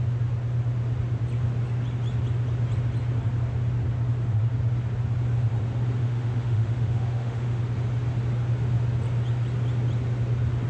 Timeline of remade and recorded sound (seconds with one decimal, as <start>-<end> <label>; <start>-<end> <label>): 0.0-6.0 recorded; 6.0-7.6 remade; 7.6-10.7 recorded

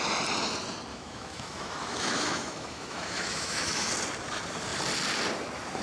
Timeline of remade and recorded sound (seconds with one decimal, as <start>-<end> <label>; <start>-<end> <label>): 0.0-0.9 recorded; 0.9-3.9 remade; 3.9-5.8 recorded

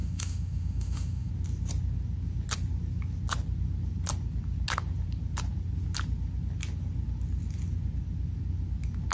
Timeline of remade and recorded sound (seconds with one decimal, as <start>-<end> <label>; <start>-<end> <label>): 0.0-1.3 remade; 1.3-9.1 recorded

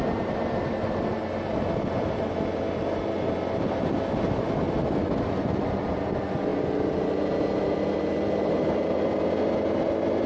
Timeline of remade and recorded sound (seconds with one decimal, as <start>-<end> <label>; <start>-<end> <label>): 0.0-10.3 recorded

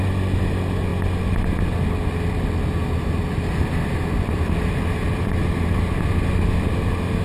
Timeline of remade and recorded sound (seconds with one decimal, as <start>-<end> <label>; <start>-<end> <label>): 0.0-7.2 recorded

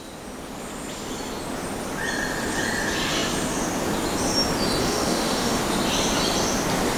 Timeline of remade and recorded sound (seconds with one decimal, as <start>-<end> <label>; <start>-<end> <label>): 0.0-4.8 recorded; 4.8-5.6 remade; 5.6-7.0 recorded

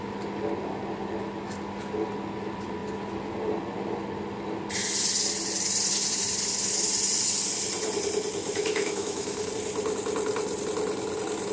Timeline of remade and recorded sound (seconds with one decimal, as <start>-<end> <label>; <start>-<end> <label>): 0.0-8.4 recorded; 8.4-9.5 remade; 9.5-11.5 recorded

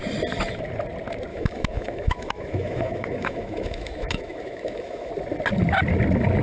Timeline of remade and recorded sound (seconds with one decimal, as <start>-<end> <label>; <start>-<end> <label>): 0.0-1.3 recorded; 1.3-5.1 remade; 5.1-6.4 recorded